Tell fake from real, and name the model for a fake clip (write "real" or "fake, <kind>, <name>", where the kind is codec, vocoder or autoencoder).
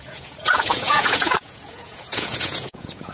fake, vocoder, Vocos